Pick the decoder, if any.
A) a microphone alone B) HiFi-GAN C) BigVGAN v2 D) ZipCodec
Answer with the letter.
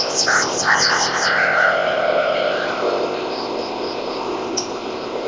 D